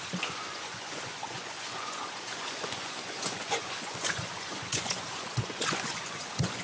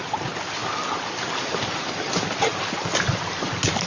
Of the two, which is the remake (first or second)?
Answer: first